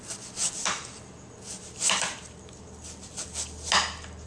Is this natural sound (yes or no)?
yes